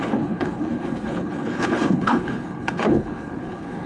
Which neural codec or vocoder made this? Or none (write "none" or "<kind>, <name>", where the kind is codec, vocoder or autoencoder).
codec, HILCodec